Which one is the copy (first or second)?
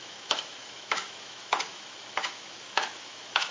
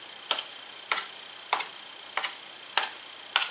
first